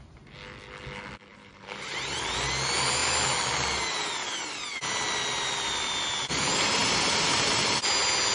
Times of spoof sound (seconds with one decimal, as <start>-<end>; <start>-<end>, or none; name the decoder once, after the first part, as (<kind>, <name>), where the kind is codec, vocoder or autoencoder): 1.3-2.2 (vocoder, BigVGAN v2)